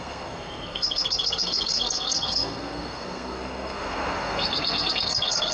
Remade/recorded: remade